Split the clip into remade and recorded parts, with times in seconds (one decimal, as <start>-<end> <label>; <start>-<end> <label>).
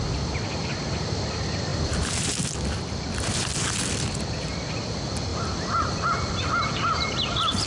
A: 0.0-5.3 recorded; 5.3-7.7 remade